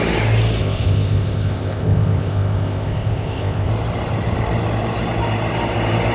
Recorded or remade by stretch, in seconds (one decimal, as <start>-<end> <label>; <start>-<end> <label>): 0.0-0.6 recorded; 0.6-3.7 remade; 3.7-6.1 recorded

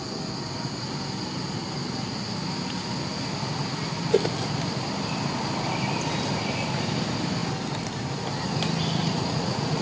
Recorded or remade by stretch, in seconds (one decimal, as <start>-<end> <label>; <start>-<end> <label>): 0.0-9.0 recorded; 9.0-9.8 remade

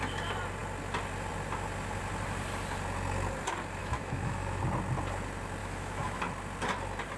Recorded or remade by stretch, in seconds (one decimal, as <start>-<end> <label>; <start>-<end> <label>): 0.0-3.8 recorded; 3.8-4.6 remade; 4.6-5.6 recorded; 5.6-6.2 remade; 6.2-7.2 recorded

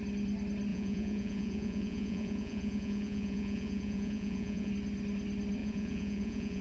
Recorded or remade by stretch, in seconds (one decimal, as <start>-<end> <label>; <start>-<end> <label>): 0.0-0.7 recorded; 0.7-4.7 remade; 4.7-5.6 recorded; 5.6-6.6 remade

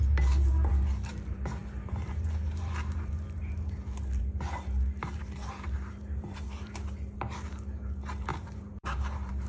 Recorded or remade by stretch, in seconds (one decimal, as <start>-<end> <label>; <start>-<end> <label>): 0.0-9.5 remade

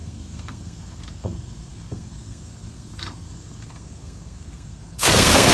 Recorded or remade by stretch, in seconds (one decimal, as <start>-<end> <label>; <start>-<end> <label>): 0.0-5.5 remade

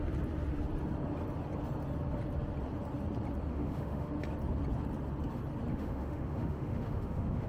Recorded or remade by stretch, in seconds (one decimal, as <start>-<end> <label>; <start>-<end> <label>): 0.0-3.5 recorded; 3.5-4.1 remade; 4.1-5.7 recorded; 5.7-7.5 remade

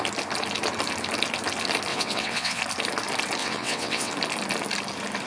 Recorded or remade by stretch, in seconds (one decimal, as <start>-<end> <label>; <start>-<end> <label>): 0.0-1.9 recorded; 1.9-2.6 remade; 2.6-3.4 recorded; 3.4-4.1 remade; 4.1-5.3 recorded